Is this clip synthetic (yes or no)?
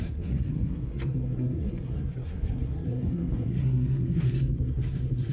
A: yes